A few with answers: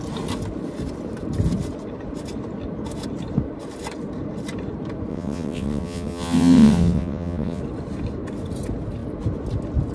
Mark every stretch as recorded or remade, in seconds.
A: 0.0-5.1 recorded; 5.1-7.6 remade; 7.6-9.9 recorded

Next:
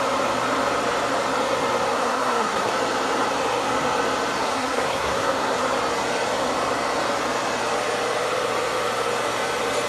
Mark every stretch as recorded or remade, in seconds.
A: 0.0-1.9 recorded; 1.9-2.7 remade; 2.7-4.4 recorded; 4.4-5.6 remade; 5.6-9.9 recorded